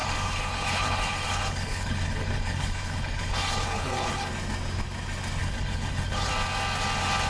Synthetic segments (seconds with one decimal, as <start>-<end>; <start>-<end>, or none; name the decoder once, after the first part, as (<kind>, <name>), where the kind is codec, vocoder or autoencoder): 0.0-4.3 (codec, HILCodec); 5.4-6.3